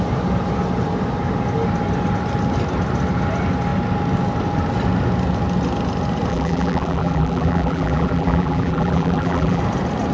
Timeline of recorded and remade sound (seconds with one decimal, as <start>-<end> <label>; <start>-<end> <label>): 0.0-6.3 recorded; 6.3-9.6 remade; 9.6-10.1 recorded